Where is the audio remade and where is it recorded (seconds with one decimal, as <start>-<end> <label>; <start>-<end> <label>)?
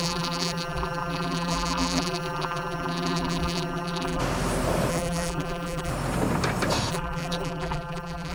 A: 0.0-4.2 remade; 4.2-4.9 recorded; 4.9-5.9 remade; 5.9-6.9 recorded; 6.9-8.3 remade